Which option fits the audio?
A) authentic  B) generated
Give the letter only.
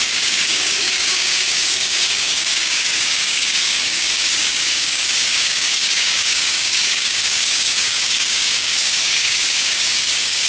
B